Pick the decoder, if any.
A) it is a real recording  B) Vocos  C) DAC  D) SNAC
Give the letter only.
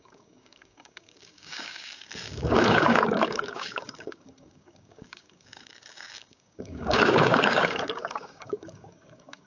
C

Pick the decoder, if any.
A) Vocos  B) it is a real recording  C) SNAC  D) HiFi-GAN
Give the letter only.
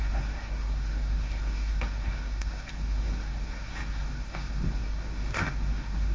C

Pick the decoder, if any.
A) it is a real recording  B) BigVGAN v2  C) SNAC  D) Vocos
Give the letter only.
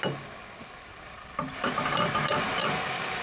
B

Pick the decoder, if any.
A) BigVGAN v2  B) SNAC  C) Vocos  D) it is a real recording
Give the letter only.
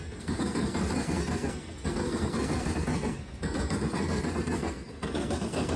B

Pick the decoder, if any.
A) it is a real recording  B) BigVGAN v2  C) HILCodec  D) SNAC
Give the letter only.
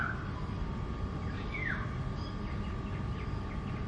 A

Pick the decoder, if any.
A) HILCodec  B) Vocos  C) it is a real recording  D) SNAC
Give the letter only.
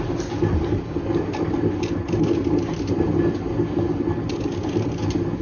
C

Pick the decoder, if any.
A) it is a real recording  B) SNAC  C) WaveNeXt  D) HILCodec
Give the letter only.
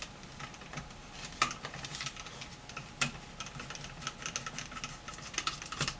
A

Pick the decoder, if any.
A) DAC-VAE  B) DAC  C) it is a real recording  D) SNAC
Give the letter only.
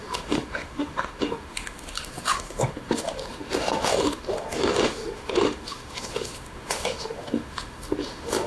A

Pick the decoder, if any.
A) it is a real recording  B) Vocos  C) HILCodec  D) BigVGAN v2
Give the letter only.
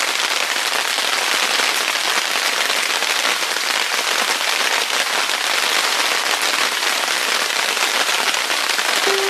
A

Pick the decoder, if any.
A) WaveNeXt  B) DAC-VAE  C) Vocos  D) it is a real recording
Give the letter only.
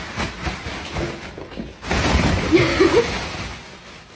D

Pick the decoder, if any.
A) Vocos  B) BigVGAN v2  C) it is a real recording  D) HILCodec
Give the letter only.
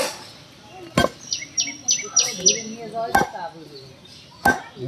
C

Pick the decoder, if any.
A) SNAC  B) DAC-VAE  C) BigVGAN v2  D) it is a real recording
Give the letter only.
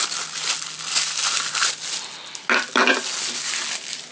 D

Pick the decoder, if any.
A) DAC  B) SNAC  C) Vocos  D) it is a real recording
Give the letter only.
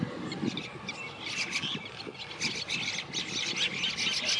D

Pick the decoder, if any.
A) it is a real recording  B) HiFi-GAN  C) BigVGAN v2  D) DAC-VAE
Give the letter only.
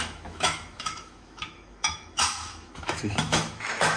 D